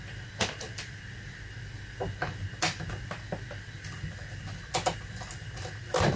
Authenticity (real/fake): real